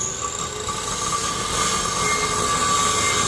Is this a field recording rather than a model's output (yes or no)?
yes